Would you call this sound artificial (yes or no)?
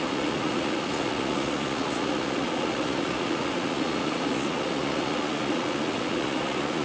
yes